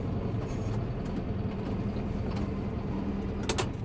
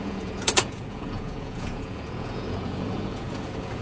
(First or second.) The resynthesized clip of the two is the second